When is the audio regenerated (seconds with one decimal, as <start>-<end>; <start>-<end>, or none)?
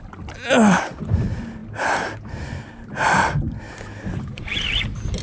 none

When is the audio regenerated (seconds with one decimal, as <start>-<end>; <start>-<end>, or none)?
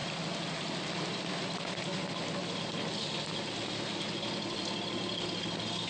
none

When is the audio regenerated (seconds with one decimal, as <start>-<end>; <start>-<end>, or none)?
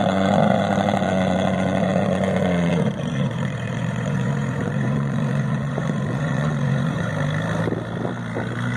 0.0-7.1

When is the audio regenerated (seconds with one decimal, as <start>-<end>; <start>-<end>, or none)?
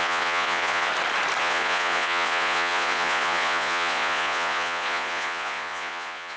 0.0-0.9; 1.4-6.4